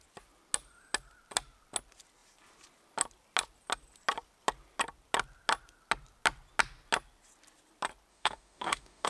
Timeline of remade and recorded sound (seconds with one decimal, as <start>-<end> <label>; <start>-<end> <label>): 0.0-8.1 recorded; 8.1-9.1 remade